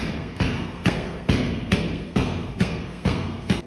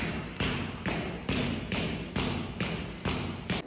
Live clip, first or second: second